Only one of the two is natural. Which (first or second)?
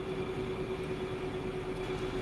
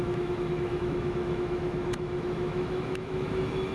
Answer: first